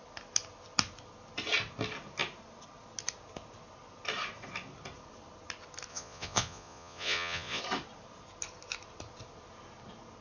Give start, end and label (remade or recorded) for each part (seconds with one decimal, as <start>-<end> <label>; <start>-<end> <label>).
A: 0.0-5.9 recorded; 5.9-7.6 remade; 7.6-10.2 recorded